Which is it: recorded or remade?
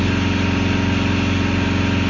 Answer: recorded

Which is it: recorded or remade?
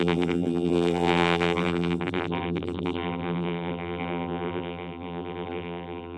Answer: remade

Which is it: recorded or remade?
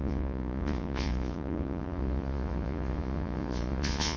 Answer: remade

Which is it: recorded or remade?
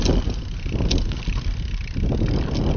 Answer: recorded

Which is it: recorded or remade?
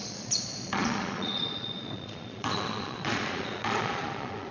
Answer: remade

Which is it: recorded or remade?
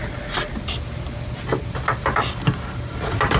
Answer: recorded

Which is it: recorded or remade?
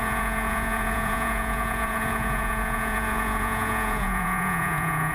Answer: remade